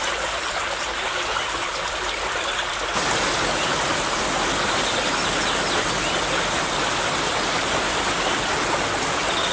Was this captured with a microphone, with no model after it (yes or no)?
yes